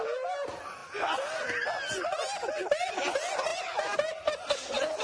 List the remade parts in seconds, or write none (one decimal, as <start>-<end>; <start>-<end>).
none

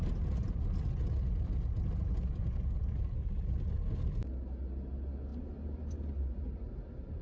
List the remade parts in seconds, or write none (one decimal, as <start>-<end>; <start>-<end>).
none

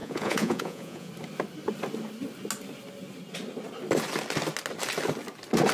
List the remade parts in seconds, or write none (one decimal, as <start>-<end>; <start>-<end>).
0.0-1.1

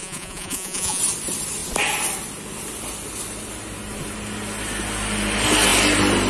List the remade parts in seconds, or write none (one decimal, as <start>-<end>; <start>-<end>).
0.0-1.0

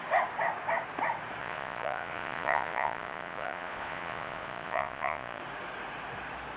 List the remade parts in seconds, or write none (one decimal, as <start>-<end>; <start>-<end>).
1.4-5.4

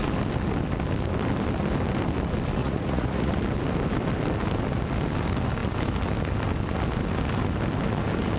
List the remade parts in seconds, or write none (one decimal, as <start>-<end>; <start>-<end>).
2.6-3.3